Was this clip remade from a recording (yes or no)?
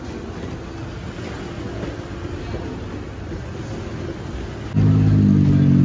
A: no